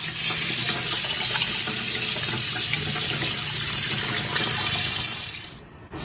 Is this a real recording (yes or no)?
yes